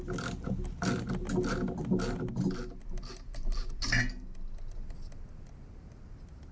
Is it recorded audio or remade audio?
recorded